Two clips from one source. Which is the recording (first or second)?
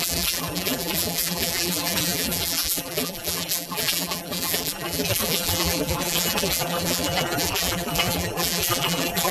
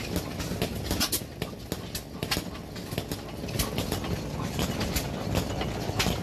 second